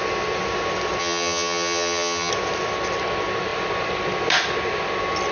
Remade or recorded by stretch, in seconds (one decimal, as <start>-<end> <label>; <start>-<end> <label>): 0.0-1.0 recorded; 1.0-2.3 remade; 2.3-5.3 recorded